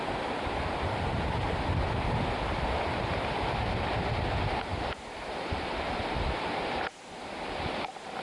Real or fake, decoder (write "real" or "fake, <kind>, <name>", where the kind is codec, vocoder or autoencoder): real